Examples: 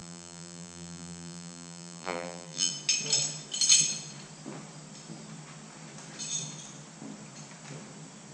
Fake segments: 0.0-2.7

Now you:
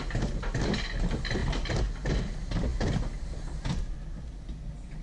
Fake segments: none

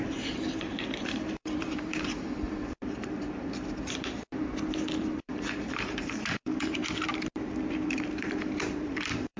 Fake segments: 0.0-4.5; 5.0-6.8; 7.7-9.4